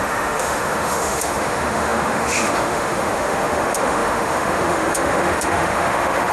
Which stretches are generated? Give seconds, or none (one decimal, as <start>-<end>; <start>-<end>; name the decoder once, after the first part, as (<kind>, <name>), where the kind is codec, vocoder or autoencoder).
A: 0.0-6.3 (autoencoder, DAC-VAE)